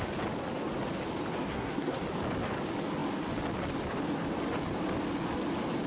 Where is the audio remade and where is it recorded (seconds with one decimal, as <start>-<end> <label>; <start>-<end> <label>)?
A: 0.0-1.4 recorded; 1.4-2.0 remade; 2.0-5.9 recorded